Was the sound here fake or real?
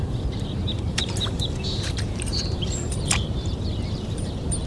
fake